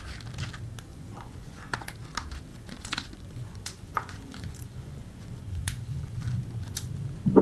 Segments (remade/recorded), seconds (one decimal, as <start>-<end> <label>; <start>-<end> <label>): 0.0-0.9 recorded; 0.9-1.9 remade; 1.9-2.5 recorded; 2.5-6.9 remade; 6.9-7.4 recorded